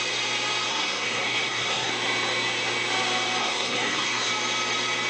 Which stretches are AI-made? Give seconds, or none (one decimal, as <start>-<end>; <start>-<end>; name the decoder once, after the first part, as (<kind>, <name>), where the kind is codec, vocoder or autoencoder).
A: 0.7-1.9 (codec, SNAC); 3.4-4.3